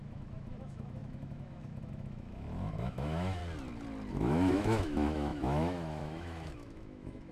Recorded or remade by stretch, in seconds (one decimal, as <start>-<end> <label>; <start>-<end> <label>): 0.0-3.4 remade; 3.4-4.1 recorded; 4.1-7.3 remade